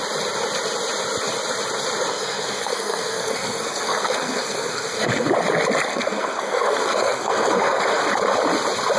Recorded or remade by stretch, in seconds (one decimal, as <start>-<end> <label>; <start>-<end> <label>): 0.0-2.1 recorded; 2.1-5.3 remade; 5.3-5.9 recorded; 5.9-8.0 remade; 8.0-9.0 recorded